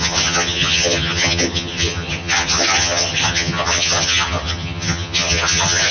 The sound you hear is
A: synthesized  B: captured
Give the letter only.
A